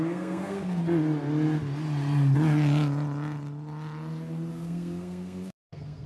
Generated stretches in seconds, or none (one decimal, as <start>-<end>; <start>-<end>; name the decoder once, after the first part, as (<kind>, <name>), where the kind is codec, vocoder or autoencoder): 0.0-0.8 (codec, SNAC); 4.5-6.1